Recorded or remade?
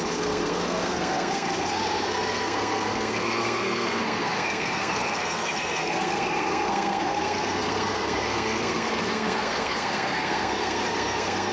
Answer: remade